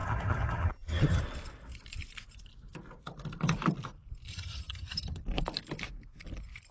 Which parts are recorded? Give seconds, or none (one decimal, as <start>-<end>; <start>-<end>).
1.2-4.3; 5.2-6.7